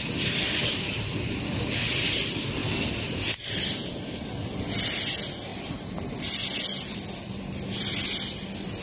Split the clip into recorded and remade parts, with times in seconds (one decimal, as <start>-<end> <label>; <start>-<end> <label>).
0.0-8.8 recorded